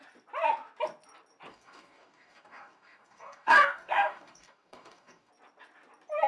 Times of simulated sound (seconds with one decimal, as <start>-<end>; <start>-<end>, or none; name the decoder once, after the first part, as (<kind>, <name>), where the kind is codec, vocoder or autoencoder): 1.5-5.3 (codec, DAC)